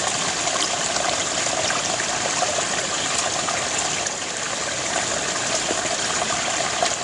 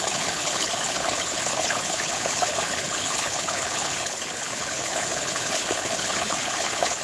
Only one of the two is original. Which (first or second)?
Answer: first